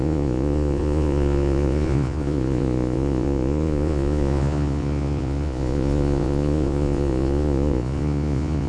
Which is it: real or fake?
fake